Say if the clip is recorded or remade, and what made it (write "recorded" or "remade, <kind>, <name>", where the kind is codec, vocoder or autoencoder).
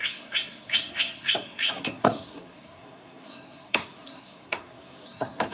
remade, codec, SNAC